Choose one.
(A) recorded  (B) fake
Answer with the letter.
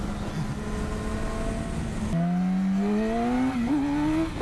A